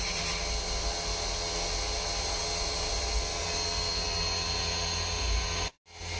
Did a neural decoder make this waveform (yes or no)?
no